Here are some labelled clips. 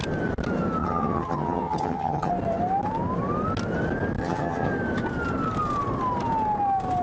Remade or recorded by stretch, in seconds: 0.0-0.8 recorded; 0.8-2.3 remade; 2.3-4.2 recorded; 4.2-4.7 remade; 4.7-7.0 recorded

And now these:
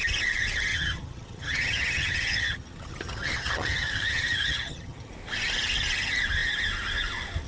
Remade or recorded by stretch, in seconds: 0.0-0.7 recorded; 0.7-5.1 remade; 5.1-7.5 recorded

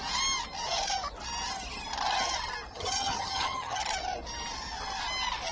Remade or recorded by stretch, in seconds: 0.0-2.7 recorded; 2.7-3.8 remade; 3.8-5.5 recorded

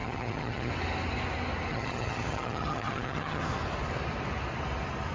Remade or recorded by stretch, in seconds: 0.0-0.7 remade; 0.7-1.7 recorded; 1.7-3.4 remade; 3.4-5.1 recorded

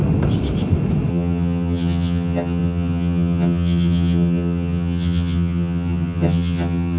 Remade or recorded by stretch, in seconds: 0.0-1.1 recorded; 1.1-7.0 remade